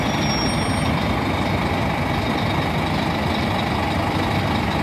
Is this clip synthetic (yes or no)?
no